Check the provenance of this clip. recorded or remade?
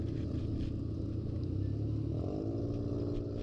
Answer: recorded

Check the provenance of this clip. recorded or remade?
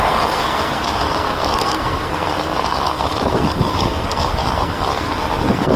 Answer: remade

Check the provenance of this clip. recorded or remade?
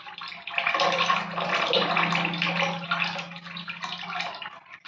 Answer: recorded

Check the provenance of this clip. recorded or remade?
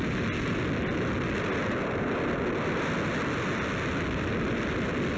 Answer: recorded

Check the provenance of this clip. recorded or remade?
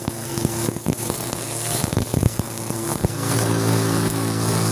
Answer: remade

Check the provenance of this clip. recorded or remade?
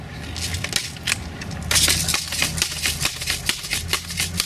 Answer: recorded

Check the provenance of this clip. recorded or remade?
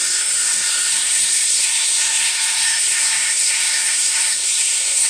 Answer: remade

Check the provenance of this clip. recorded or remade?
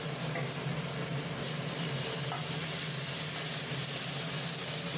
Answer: recorded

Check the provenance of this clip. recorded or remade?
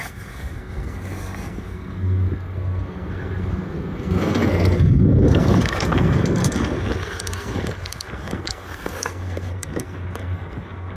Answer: remade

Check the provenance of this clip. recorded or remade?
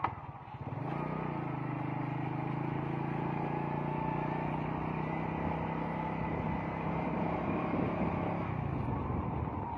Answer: recorded